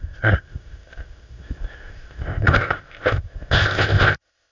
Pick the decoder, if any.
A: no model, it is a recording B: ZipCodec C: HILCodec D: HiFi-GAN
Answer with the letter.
B